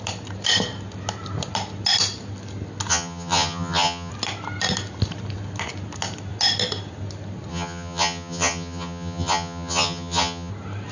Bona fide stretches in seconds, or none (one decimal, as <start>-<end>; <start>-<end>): 0.0-2.9; 4.1-7.5; 10.5-10.9